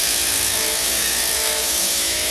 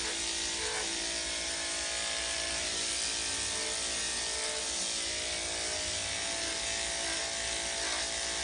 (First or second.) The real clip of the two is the second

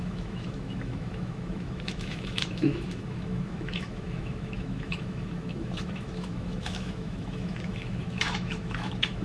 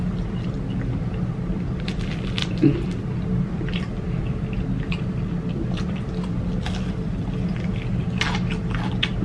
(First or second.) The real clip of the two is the second